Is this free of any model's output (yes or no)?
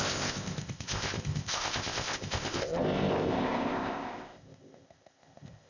no